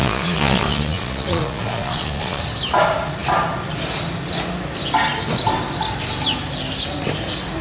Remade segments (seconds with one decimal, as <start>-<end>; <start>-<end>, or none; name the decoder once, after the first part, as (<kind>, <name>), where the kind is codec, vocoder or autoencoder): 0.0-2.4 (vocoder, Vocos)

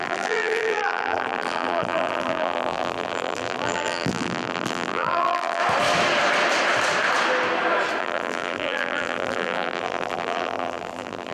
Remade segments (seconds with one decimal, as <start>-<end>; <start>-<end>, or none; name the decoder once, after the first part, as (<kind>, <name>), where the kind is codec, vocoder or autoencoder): 0.0-5.6 (vocoder, BigVGAN v2); 8.0-11.3

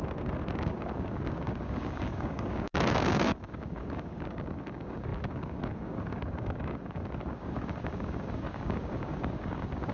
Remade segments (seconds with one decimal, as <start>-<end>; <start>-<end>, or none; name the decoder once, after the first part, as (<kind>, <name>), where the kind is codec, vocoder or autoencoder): 0.0-9.9 (codec, DAC)